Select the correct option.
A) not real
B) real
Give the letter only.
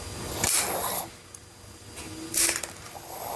B